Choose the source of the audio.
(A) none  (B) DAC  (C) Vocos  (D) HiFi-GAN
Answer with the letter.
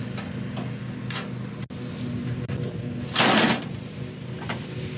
A